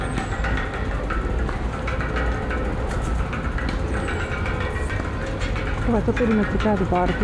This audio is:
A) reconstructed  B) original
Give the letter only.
B